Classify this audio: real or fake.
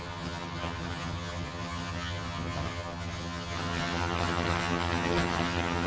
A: fake